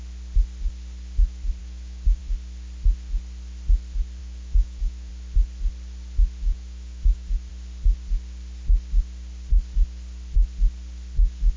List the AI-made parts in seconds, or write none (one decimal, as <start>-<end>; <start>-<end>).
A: 1.6-2.2; 4.2-5.1; 6.5-7.5